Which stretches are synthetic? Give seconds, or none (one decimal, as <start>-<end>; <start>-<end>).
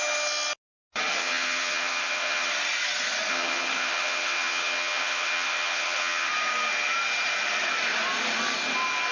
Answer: 1.1-2.5; 3.3-6.3